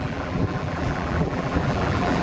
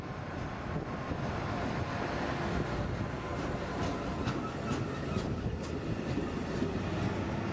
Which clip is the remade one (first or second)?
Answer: first